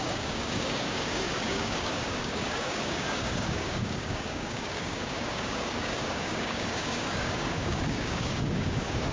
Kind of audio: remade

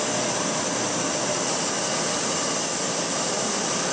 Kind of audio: recorded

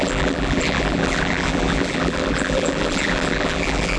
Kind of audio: remade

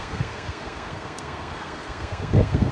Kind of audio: remade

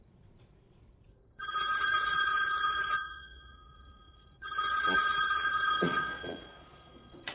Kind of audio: remade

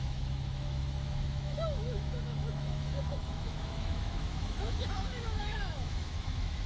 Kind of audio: remade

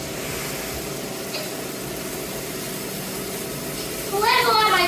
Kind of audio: recorded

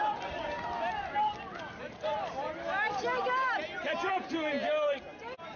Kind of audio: recorded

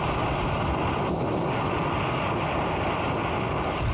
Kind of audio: recorded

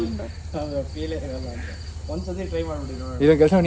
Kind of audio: recorded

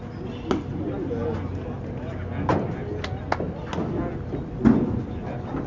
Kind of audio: recorded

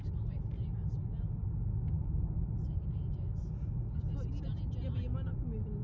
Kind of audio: recorded